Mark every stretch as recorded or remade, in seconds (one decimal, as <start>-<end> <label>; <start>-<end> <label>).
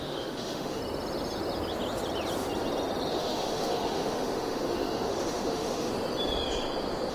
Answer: 0.0-0.8 remade; 0.8-3.1 recorded; 3.1-5.9 remade; 5.9-7.1 recorded